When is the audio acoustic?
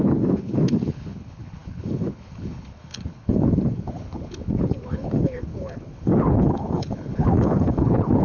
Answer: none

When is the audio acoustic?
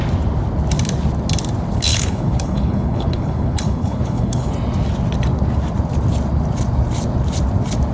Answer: 0.0-1.9; 4.5-7.9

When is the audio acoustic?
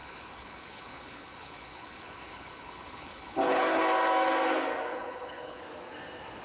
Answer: 3.8-4.9; 5.6-6.4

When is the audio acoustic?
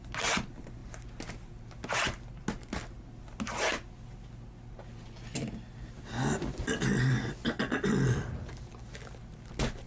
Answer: 0.0-9.9